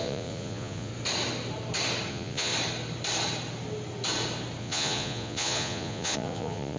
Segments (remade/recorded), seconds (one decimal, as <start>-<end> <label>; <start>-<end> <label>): 0.0-0.9 remade; 0.9-2.1 recorded; 2.1-2.5 remade; 2.5-4.6 recorded; 4.6-6.8 remade